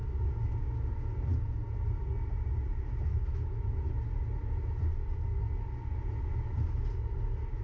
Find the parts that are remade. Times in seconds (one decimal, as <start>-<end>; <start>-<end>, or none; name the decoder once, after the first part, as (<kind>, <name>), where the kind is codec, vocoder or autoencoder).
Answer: 3.1-3.9 (autoencoder, DAC-VAE)